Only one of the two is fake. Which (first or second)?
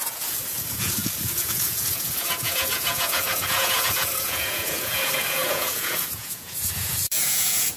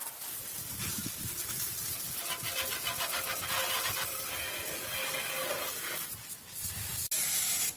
first